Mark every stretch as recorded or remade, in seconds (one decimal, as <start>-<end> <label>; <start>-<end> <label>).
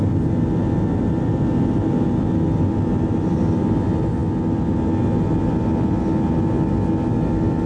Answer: 0.0-7.7 recorded